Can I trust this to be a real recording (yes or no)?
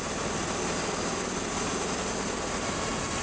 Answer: yes